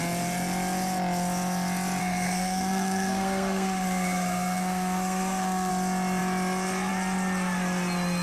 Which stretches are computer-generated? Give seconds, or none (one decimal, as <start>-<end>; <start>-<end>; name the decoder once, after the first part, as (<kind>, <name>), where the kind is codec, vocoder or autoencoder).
2.0-5.7 (codec, SNAC)